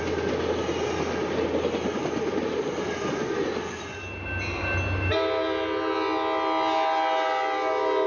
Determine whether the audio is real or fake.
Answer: real